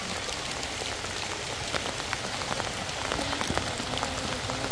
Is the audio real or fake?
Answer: real